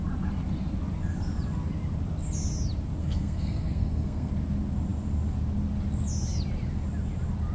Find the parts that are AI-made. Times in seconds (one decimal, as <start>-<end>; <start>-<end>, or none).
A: 3.0-4.3